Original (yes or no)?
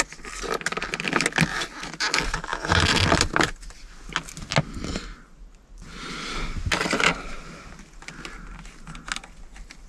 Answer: yes